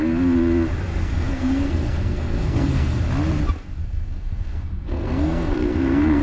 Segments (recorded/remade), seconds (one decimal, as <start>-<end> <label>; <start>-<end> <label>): 0.0-1.0 recorded; 1.0-3.0 remade; 3.0-3.8 recorded; 3.8-6.2 remade